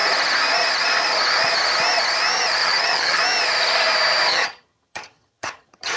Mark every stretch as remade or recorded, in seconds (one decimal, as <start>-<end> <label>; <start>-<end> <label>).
0.0-2.6 recorded; 2.6-3.2 remade; 3.2-4.3 recorded; 4.3-6.0 remade